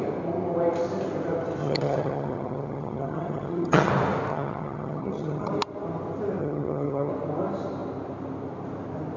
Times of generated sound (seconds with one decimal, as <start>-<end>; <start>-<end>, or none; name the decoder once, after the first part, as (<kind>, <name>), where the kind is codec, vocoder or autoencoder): 1.6-3.9 (vocoder, HiFi-GAN); 4.3-5.5; 6.4-7.1